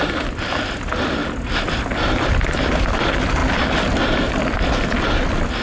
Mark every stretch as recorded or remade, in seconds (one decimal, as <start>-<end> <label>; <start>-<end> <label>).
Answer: 0.0-1.2 recorded; 1.2-3.0 remade; 3.0-5.6 recorded